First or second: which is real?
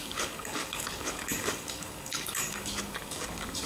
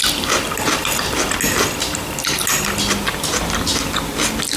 second